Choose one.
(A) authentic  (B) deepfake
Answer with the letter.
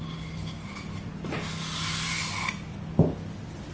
A